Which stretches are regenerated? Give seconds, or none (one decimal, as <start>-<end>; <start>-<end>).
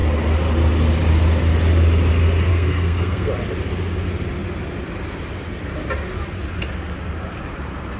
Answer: 2.5-3.3